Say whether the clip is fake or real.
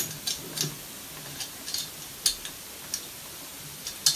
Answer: real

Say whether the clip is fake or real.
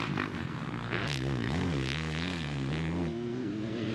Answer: fake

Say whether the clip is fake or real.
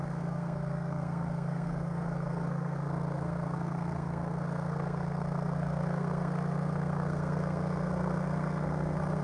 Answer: fake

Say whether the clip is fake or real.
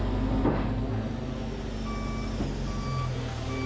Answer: real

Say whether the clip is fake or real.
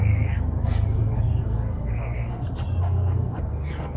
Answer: fake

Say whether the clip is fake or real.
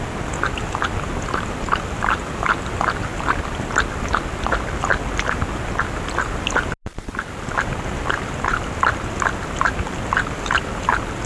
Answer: real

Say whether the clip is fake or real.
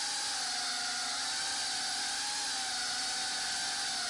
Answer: real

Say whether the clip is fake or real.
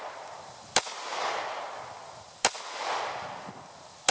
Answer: real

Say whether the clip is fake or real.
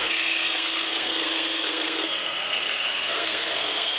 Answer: fake